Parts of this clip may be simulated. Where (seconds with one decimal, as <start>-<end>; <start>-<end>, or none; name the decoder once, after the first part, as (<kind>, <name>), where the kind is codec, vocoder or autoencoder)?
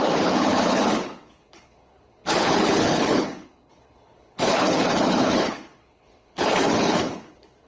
0.0-7.7 (codec, HILCodec)